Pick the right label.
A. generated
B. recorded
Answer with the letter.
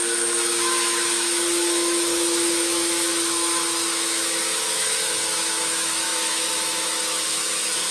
A